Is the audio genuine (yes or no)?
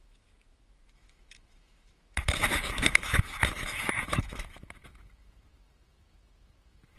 no